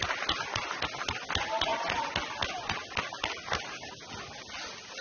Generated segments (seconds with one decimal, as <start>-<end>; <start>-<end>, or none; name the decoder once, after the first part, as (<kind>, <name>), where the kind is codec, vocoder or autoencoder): none